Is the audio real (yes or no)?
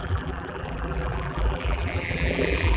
no